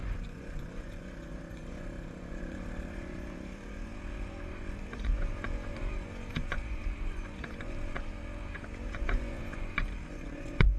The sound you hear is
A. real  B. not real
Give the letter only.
B